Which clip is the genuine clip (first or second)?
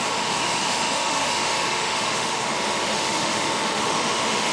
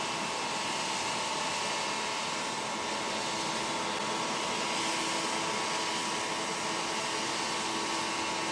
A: second